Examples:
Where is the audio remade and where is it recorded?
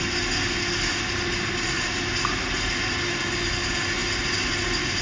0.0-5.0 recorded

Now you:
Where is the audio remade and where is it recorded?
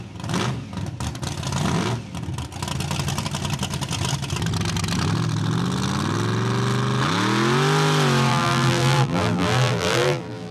0.0-8.3 recorded; 8.3-10.5 remade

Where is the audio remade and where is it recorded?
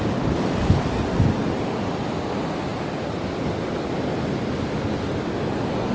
0.0-5.9 recorded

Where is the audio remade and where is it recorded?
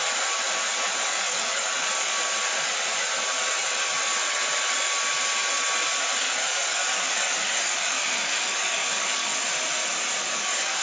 0.0-0.9 recorded; 0.9-2.1 remade; 2.1-6.2 recorded; 6.2-9.3 remade; 9.3-10.2 recorded; 10.2-10.8 remade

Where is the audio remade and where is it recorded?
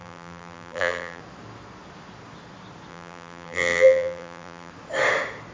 0.0-1.2 remade; 1.2-2.9 recorded; 2.9-4.7 remade; 4.7-5.5 recorded